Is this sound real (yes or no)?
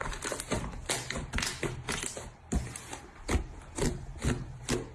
yes